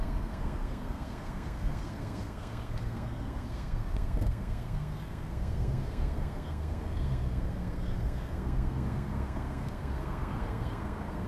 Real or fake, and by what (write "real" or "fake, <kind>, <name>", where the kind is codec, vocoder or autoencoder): fake, codec, SNAC